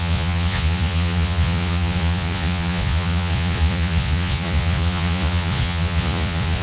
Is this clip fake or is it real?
fake